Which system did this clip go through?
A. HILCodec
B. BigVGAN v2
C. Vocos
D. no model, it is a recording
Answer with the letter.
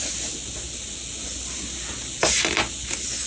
D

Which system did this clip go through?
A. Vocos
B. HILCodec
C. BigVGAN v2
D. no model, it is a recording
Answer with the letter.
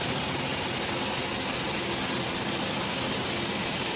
D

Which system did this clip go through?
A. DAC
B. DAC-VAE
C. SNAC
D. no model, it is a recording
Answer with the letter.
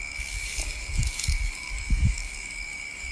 A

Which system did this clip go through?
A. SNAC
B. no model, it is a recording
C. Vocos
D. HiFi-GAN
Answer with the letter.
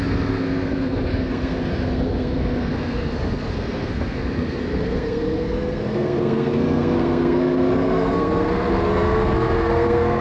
A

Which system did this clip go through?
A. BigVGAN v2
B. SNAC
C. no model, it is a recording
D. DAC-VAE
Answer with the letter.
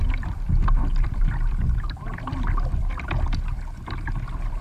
A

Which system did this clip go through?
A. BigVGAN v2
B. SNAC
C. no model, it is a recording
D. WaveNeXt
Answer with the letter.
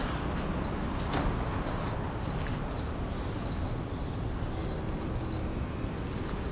C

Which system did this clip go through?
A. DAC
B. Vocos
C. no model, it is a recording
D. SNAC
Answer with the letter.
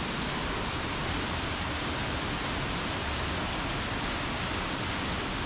C